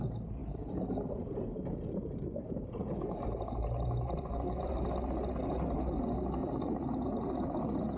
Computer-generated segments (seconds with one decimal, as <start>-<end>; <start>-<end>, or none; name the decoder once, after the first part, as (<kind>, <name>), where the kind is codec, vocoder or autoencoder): 0.4-4.7 (vocoder, BigVGAN v2); 6.4-7.6